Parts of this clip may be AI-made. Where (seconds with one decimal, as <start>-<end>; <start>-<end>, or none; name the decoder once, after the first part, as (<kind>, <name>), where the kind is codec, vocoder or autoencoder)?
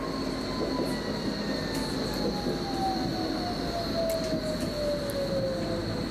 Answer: none